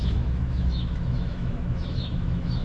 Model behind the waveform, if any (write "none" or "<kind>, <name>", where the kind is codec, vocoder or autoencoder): autoencoder, DAC-VAE